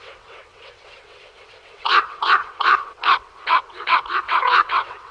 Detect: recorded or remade remade